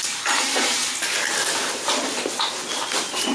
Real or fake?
real